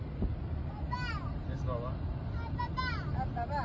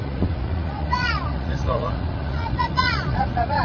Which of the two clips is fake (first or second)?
second